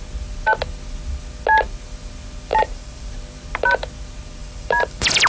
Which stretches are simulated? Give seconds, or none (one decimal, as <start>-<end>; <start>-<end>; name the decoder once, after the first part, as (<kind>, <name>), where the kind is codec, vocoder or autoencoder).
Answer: 2.5-3.1 (vocoder, BigVGAN v2); 4.4-5.3